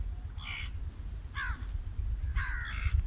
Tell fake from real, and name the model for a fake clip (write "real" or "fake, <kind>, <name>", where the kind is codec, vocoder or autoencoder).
real